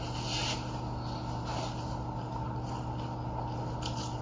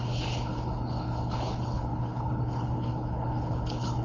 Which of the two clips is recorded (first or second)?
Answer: first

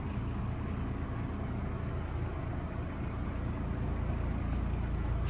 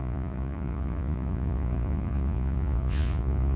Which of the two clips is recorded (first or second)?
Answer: first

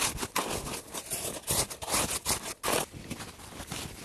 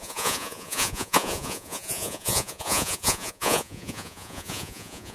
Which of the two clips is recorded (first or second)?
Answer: first